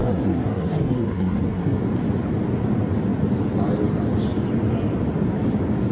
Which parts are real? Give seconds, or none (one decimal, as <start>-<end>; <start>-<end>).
1.8-5.9